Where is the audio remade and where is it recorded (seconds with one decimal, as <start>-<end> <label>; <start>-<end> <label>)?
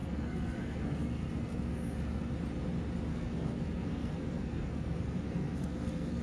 0.0-2.3 remade; 2.3-3.1 recorded; 3.1-6.2 remade